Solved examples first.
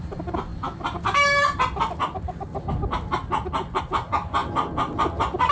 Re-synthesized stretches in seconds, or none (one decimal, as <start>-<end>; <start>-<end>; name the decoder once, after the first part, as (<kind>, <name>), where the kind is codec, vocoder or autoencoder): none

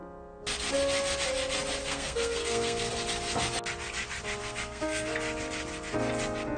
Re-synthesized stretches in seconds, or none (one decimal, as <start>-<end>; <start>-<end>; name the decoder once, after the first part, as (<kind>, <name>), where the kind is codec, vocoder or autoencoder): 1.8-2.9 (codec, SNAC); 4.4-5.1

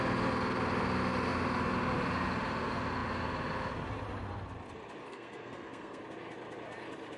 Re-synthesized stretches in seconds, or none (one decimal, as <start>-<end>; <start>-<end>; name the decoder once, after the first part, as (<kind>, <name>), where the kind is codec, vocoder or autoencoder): 5.0-6.0 (codec, SNAC)